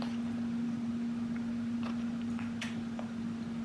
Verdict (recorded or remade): remade